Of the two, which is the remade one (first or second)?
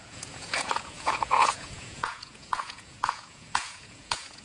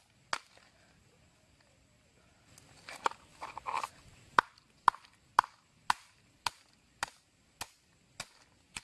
first